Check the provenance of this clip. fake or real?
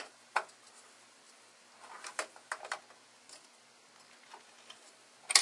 real